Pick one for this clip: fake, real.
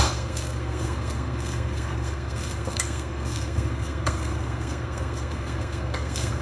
fake